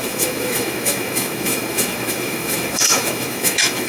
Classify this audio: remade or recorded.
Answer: remade